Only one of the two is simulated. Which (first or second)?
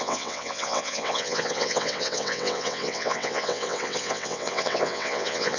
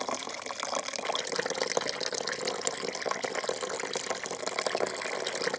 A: first